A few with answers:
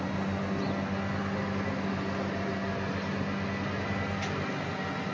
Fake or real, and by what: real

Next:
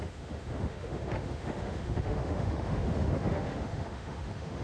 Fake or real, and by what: fake, autoencoder, DAC-VAE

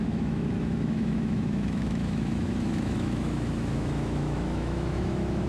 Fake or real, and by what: fake, autoencoder, DAC-VAE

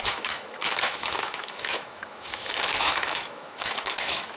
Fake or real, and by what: fake, autoencoder, DAC-VAE